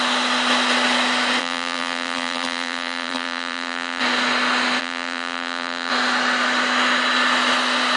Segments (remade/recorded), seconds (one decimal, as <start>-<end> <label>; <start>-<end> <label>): 0.0-1.4 recorded; 1.4-4.0 remade; 4.0-4.8 recorded; 4.8-5.9 remade; 5.9-8.0 recorded